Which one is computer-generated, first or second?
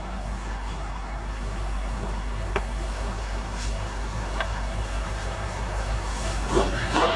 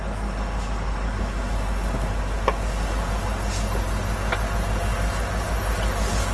first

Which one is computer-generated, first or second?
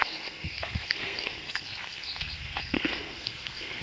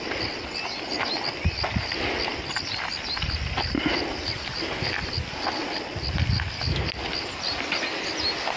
first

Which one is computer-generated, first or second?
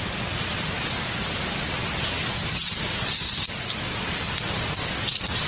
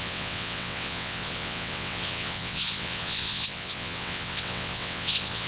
second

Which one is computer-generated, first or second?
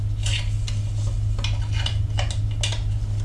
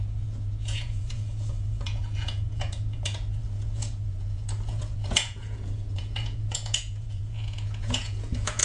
second